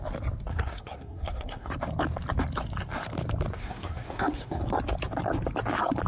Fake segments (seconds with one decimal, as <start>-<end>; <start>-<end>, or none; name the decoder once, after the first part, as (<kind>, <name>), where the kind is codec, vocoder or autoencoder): 0.5-1.7 (codec, SNAC); 3.6-4.6